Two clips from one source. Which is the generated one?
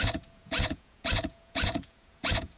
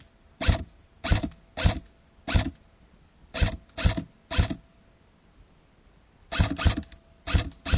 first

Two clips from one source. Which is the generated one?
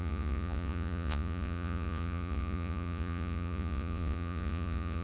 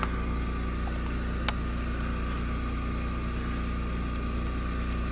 first